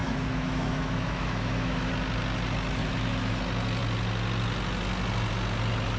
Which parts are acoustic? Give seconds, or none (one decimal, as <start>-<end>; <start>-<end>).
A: 1.9-2.8; 3.4-6.0